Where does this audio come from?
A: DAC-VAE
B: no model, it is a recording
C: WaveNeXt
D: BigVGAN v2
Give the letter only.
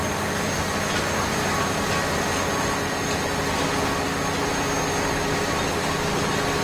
B